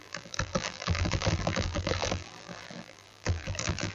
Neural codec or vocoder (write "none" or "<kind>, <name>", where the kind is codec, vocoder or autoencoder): vocoder, BigVGAN v2